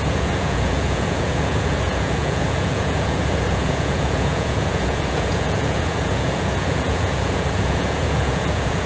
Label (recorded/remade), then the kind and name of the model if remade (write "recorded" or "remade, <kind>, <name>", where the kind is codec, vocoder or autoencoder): remade, vocoder, Vocos